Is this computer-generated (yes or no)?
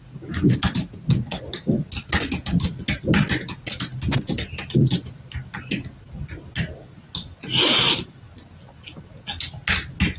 no